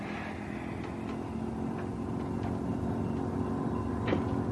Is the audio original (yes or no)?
yes